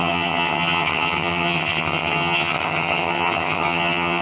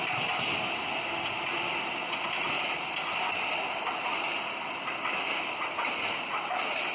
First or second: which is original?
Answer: second